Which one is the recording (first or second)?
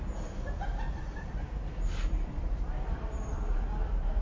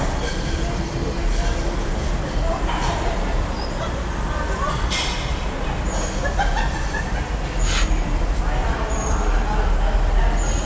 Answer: second